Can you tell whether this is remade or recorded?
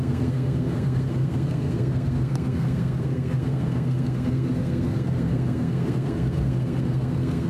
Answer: remade